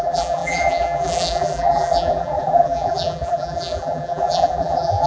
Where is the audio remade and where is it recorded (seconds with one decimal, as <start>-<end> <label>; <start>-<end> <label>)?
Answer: 0.0-5.1 remade